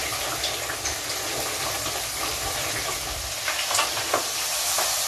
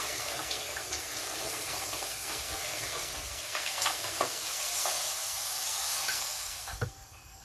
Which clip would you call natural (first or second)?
first